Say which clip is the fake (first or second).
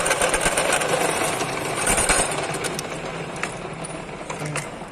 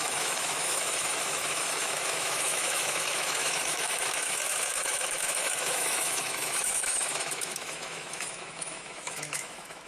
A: second